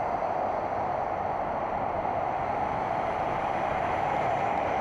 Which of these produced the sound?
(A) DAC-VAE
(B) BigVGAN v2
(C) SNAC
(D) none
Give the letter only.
D